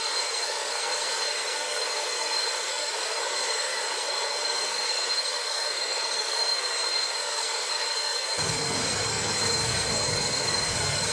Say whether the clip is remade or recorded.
remade